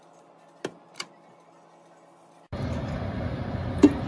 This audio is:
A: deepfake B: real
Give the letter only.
B